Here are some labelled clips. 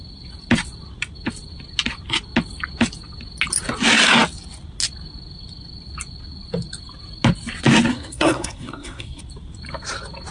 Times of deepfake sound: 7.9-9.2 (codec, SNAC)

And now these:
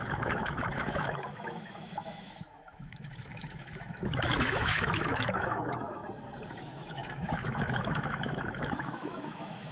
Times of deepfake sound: 0.0-6.0 (autoencoder, DAC-VAE); 6.5-9.7

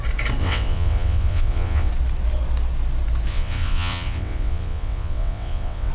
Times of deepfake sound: 0.4-1.9 (vocoder, WaveNeXt); 3.3-5.9

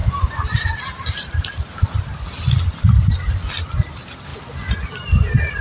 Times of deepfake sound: none

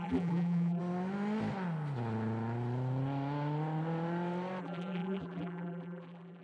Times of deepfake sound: 0.0-0.8 (vocoder, BigVGAN v2); 4.6-6.4

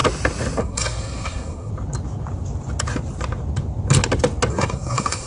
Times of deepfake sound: 0.6-1.7 (codec, SNAC); 4.5-5.3

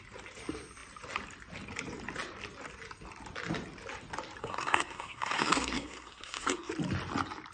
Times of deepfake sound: 4.4-6.7 (codec, SNAC)

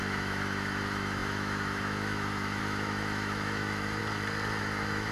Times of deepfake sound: 0.0-4.0 (autoencoder, DAC-VAE); 4.6-5.1